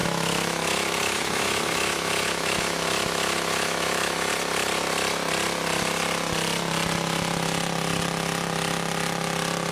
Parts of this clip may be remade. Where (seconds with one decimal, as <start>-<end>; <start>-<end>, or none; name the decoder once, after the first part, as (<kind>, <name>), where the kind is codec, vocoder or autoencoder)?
0.0-4.3 (autoencoder, DAC-VAE)